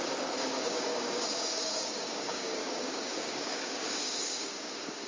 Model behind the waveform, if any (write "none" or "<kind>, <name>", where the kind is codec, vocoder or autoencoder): codec, DAC